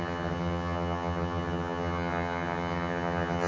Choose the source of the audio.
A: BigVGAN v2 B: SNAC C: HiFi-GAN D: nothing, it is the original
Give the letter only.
C